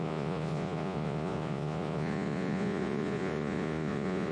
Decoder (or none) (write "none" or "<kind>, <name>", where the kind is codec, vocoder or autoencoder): vocoder, Vocos